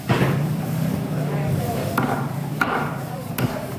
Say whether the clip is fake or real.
fake